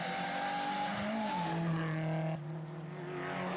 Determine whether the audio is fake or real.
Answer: real